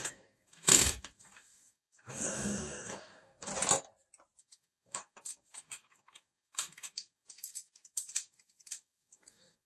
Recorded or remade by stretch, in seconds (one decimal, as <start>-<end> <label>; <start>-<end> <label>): 0.0-3.5 remade; 3.5-4.4 recorded; 4.4-9.7 remade